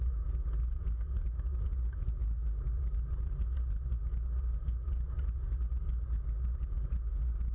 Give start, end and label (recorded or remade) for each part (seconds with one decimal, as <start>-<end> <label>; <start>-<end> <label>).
0.0-7.5 recorded